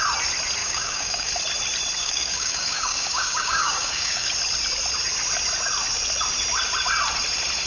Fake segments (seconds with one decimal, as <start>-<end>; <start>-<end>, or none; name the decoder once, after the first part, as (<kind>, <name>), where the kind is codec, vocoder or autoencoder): 0.6-1.3 (codec, DAC); 2.0-4.3